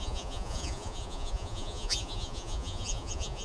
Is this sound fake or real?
fake